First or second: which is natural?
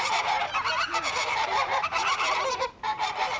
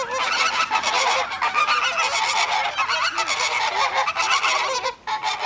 second